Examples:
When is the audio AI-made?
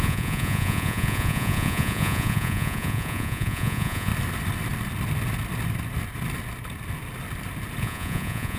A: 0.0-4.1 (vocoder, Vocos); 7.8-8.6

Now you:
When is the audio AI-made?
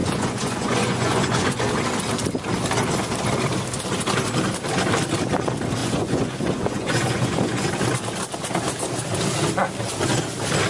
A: 0.0-1.7 (vocoder, Vocos); 5.8-7.7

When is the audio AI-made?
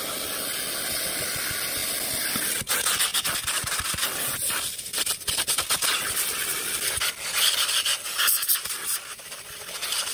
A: 3.1-5.3 (vocoder, BigVGAN v2)